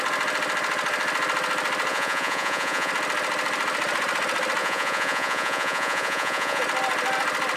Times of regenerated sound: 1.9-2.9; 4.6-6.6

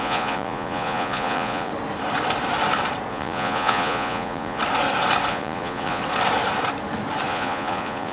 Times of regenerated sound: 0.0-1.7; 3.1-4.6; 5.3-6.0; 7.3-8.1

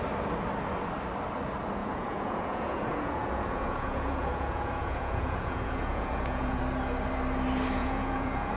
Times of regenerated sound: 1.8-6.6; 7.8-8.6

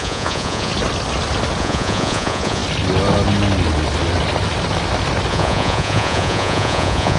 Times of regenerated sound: 0.0-0.7; 1.6-2.6; 5.3-7.2

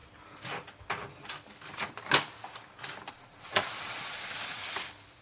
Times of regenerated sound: 3.1-4.6